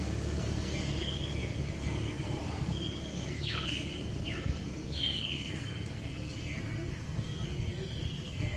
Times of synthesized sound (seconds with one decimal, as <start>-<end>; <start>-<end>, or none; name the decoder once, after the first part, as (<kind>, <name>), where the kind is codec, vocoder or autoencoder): 0.0-8.6 (codec, SNAC)